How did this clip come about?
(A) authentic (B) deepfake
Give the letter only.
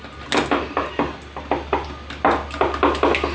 A